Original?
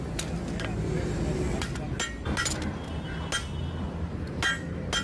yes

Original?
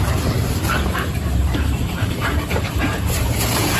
no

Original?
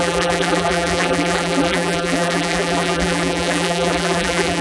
no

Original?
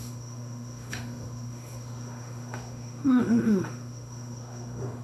no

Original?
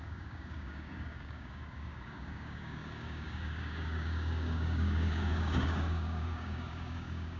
no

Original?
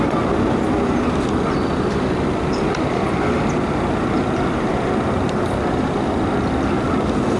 yes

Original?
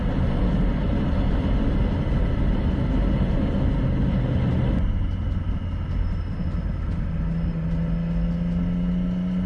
yes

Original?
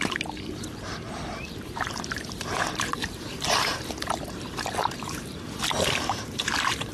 no